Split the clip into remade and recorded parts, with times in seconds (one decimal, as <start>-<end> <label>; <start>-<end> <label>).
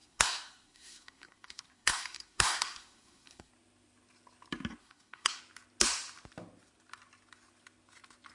0.0-3.5 remade; 3.5-4.8 recorded; 4.8-5.4 remade; 5.4-8.3 recorded